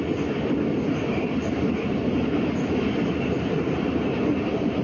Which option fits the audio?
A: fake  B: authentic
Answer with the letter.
B